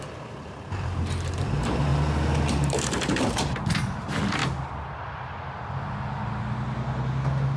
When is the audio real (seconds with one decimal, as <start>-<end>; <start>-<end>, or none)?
1.9-2.5; 4.4-7.6